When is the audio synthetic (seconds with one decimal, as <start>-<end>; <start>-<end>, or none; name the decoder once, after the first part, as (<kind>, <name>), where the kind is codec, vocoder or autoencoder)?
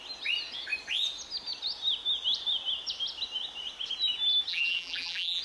4.5-5.4 (vocoder, BigVGAN v2)